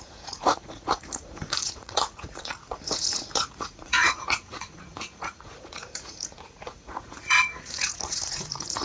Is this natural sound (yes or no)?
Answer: no